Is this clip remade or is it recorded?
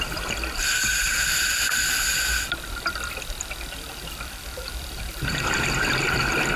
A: remade